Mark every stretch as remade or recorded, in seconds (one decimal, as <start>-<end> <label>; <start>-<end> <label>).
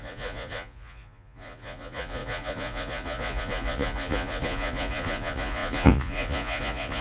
0.0-7.0 remade